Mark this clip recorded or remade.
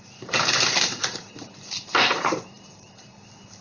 remade